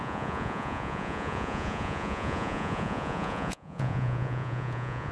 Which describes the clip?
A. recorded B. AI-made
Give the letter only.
B